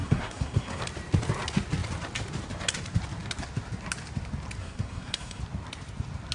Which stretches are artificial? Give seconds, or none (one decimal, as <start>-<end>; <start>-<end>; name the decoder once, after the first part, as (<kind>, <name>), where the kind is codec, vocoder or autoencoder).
0.0-0.8 (codec, SNAC); 4.6-5.4

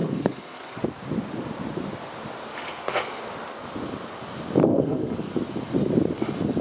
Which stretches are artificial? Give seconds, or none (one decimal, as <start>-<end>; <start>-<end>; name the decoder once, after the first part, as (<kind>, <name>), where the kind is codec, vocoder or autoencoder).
0.0-0.8 (codec, SNAC); 2.5-3.2; 4.7-5.3

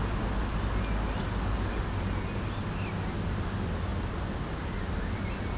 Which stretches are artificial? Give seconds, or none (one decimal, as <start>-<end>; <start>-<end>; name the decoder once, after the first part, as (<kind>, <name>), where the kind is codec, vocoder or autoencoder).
none

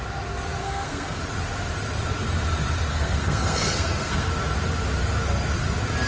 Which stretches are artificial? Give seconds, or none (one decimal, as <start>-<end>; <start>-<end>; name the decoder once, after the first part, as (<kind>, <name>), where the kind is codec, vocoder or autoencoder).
0.6-1.2 (codec, SNAC); 2.9-4.3

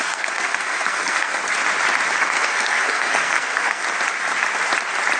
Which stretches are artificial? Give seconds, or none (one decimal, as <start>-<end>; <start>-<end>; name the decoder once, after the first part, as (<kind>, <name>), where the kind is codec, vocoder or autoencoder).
0.0-1.4 (codec, SNAC); 2.2-3.8

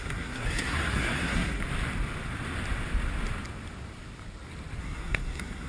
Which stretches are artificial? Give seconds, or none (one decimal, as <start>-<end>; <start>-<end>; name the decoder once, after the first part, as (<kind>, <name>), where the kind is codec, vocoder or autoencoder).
0.0-1.6 (codec, SNAC); 4.8-5.7

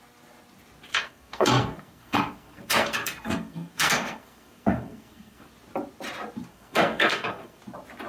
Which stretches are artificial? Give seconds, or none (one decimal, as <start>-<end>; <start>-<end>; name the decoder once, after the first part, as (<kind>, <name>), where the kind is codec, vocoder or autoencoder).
0.9-5.5 (codec, SNAC); 6.5-7.6

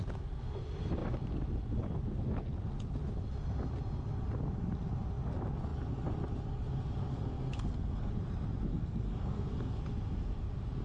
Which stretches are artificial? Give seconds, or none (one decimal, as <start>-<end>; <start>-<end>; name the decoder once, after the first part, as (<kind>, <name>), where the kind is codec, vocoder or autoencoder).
7.1-8.1 (codec, SNAC); 8.7-9.8